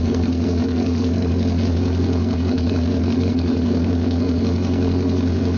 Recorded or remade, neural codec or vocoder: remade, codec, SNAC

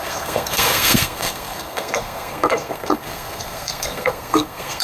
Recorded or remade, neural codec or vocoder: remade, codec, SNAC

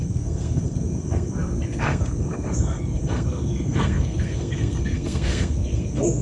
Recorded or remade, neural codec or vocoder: remade, codec, SNAC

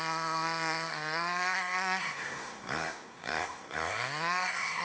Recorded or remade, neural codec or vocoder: remade, codec, SNAC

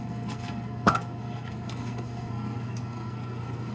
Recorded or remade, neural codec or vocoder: remade, codec, SNAC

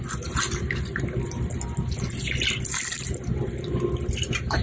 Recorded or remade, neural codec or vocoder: recorded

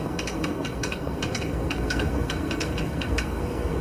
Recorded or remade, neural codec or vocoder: remade, codec, SNAC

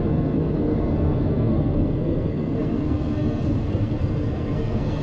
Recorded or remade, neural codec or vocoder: remade, codec, SNAC